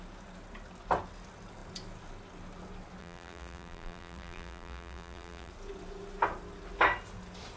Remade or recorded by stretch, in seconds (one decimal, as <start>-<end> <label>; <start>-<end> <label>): 0.0-3.0 recorded; 3.0-5.5 remade; 5.5-7.6 recorded